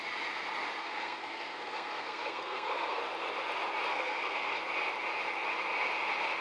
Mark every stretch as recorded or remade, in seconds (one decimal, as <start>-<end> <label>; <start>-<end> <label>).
0.0-0.8 recorded; 0.8-3.0 remade; 3.0-3.9 recorded; 3.9-4.6 remade; 4.6-6.4 recorded